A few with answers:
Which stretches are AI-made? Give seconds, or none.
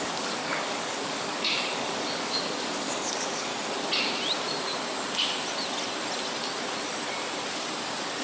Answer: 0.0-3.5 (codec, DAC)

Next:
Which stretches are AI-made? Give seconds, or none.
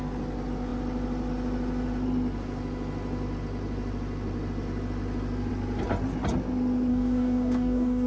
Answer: 6.9-8.1 (codec, DAC)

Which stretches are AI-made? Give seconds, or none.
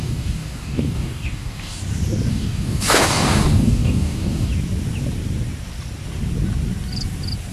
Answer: 0.0-1.8 (codec, DAC); 2.3-4.5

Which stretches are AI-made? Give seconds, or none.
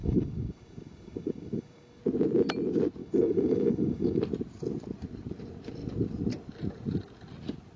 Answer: 0.0-2.0 (codec, DAC); 3.0-4.2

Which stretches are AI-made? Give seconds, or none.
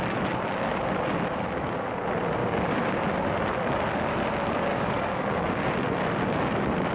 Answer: 2.4-3.0 (codec, DAC); 4.7-5.4